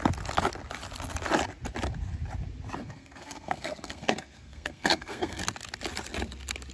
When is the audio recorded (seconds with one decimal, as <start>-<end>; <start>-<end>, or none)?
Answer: 0.0-2.8; 5.4-6.7